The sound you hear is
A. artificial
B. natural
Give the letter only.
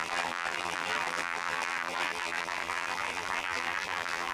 A